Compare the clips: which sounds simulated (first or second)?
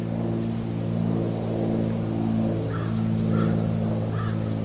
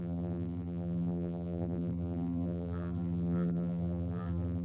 second